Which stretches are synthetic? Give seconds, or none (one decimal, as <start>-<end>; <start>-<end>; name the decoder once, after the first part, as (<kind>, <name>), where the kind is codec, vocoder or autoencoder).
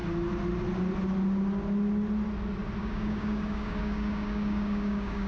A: 2.8-5.3 (codec, DAC)